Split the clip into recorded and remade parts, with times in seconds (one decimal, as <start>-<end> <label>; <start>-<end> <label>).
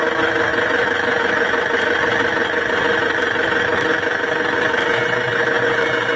0.0-6.2 recorded